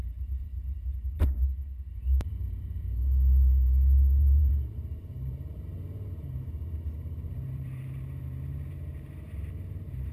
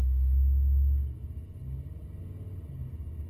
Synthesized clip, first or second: first